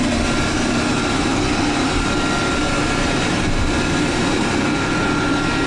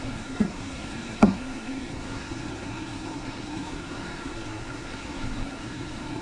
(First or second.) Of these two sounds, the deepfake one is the second